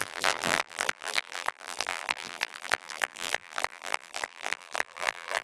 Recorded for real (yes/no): no